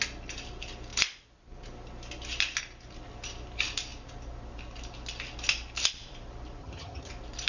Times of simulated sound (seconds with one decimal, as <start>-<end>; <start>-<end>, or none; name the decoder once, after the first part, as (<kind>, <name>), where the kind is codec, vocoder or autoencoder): 6.6-7.1 (vocoder, HiFi-GAN)